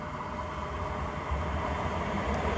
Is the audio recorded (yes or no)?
yes